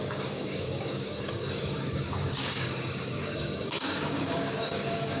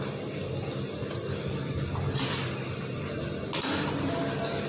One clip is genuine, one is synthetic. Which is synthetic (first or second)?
first